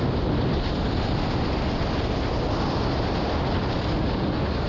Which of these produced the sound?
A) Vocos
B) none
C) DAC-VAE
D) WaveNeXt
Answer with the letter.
B